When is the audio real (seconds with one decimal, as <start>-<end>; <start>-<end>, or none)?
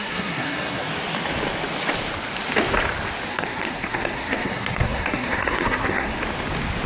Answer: 0.9-3.3; 6.2-6.9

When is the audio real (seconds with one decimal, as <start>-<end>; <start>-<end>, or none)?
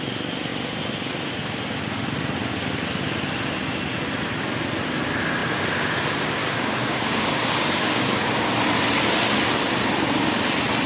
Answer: 0.0-6.4; 8.3-10.9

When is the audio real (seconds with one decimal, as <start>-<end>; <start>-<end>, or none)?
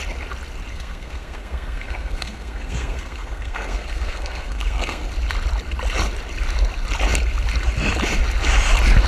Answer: 0.0-0.7; 5.1-9.1